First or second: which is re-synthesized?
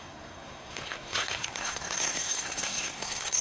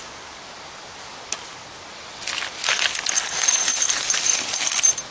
first